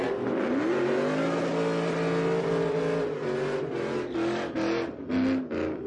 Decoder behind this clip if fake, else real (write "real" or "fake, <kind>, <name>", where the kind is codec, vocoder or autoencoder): real